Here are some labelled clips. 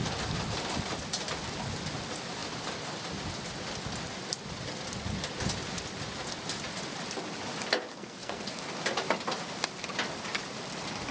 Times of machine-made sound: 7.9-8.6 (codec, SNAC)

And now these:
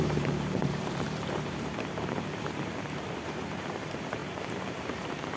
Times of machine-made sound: 0.0-5.4 (vocoder, BigVGAN v2)

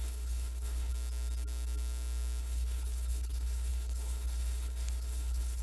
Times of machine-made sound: 0.0-0.9 (codec, HILCodec); 2.4-5.6

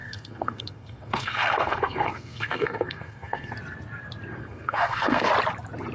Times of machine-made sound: 0.0-3.5 (codec, SNAC); 4.4-5.3

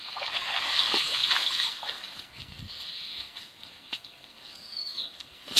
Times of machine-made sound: 0.0-5.6 (codec, SNAC)

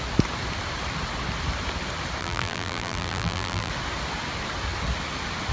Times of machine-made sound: 2.2-3.7 (vocoder, BigVGAN v2)

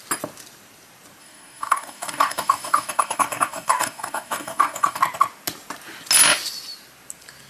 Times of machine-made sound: 1.2-5.0 (codec, DAC)

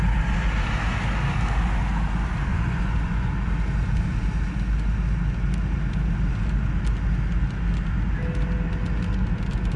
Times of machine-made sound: 2.5-3.3 (vocoder, Vocos)